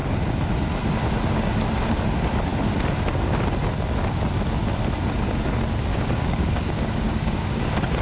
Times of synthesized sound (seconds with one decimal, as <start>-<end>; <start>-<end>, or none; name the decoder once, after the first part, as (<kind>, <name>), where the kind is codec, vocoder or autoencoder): 5.9-7.6 (codec, DAC)